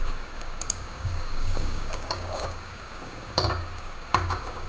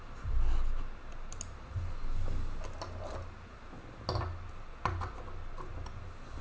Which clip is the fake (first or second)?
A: first